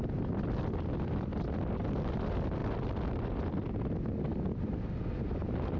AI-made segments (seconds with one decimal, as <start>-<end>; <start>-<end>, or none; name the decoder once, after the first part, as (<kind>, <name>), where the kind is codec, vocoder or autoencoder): none